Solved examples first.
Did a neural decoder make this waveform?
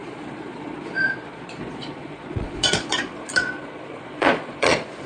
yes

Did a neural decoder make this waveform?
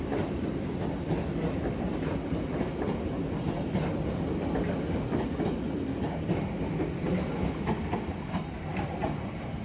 no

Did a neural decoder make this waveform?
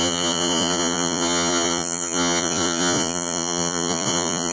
yes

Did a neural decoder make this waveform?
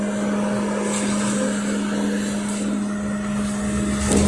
no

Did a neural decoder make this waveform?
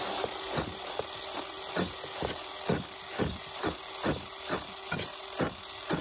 no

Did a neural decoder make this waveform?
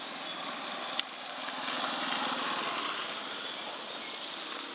no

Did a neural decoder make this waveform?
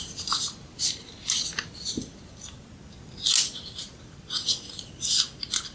no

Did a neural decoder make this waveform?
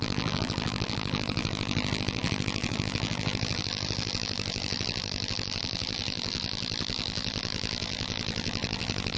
yes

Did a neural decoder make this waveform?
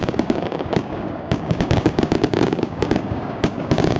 yes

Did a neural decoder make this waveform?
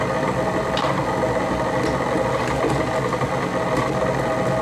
no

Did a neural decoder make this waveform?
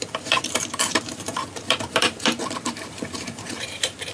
yes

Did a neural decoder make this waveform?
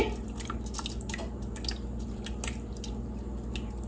no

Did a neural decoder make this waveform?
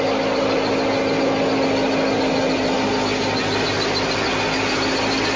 no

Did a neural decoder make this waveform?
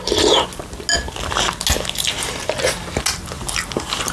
no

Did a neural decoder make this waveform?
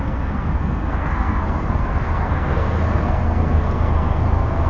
yes